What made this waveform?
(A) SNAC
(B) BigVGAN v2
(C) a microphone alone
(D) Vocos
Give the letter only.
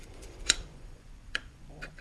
D